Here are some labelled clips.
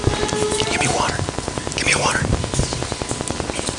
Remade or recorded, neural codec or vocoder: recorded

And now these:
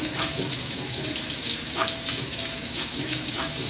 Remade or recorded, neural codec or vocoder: remade, autoencoder, DAC-VAE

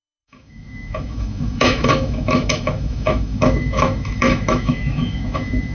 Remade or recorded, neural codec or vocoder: remade, autoencoder, DAC-VAE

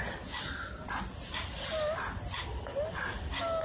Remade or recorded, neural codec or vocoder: recorded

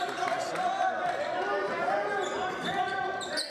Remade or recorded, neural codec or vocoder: recorded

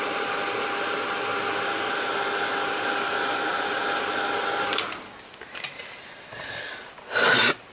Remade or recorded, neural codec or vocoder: recorded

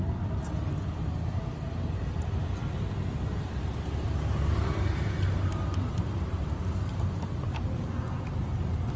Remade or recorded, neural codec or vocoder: recorded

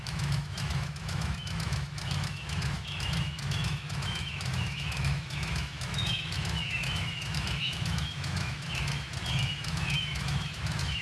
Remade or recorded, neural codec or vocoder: remade, autoencoder, DAC-VAE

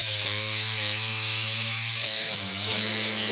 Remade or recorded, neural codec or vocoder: remade, autoencoder, DAC-VAE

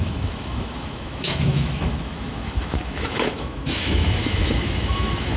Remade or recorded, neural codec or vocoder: remade, autoencoder, DAC-VAE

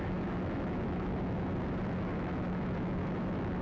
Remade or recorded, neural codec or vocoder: remade, autoencoder, DAC-VAE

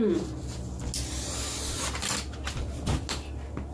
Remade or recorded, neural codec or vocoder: recorded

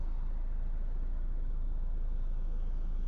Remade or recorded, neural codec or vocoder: recorded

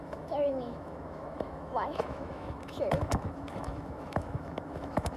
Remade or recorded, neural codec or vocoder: remade, autoencoder, DAC-VAE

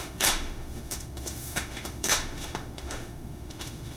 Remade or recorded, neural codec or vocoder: remade, autoencoder, DAC-VAE